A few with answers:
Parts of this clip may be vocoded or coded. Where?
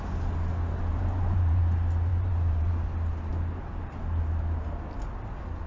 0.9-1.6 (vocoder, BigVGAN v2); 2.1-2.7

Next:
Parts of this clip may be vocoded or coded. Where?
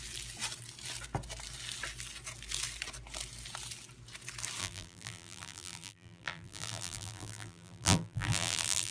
4.6-8.9 (vocoder, BigVGAN v2)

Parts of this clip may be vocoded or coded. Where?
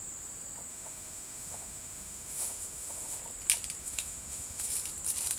0.7-3.2 (autoencoder, DAC-VAE); 3.8-4.7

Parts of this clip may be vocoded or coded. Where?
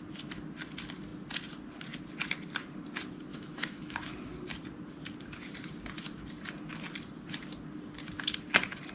3.3-4.1 (autoencoder, DAC-VAE)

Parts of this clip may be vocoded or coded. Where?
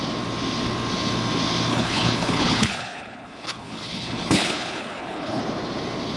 1.7-5.4 (codec, HILCodec)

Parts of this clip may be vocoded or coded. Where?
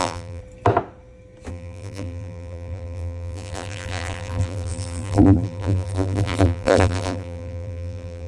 0.0-0.4 (vocoder, BigVGAN v2); 1.5-8.3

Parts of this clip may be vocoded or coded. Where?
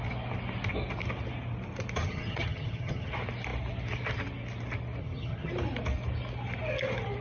2.0-3.1 (vocoder, HiFi-GAN); 5.0-5.5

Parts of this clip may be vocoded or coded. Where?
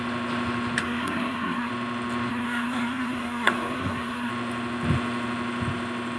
0.8-1.7 (codec, SNAC); 2.3-4.3